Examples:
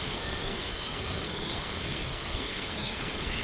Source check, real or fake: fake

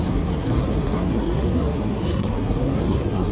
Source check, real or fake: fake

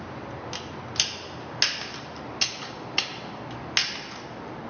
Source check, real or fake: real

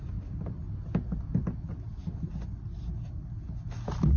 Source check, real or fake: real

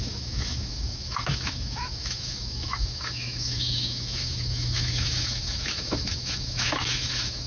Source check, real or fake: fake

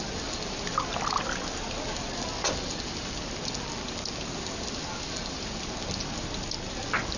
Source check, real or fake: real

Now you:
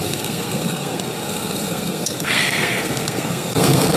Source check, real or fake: fake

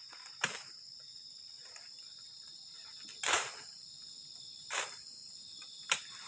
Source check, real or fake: real